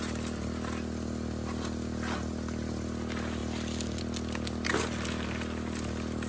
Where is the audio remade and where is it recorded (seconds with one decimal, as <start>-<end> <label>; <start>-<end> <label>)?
0.0-6.3 recorded